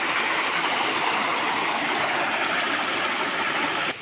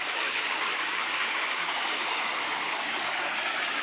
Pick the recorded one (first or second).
first